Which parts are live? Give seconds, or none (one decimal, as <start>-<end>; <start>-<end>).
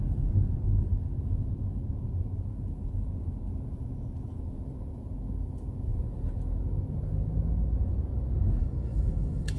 0.0-8.6